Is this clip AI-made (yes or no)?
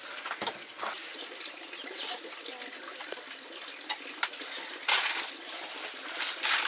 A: no